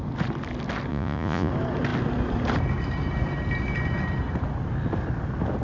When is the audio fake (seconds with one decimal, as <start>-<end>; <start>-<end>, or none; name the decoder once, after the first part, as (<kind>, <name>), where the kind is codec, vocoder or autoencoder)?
0.9-1.5 (vocoder, Vocos)